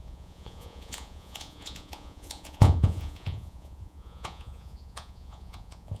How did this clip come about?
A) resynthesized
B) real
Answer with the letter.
A